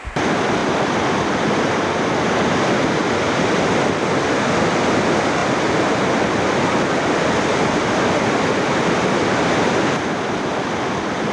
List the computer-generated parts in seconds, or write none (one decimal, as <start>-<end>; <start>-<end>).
0.6-2.1; 5.4-6.7